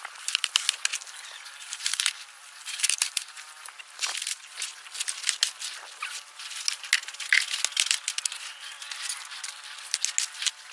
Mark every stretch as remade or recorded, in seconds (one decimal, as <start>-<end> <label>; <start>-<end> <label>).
0.0-0.9 recorded; 0.9-3.7 remade; 3.7-10.7 recorded